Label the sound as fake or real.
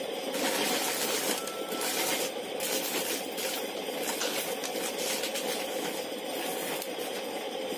real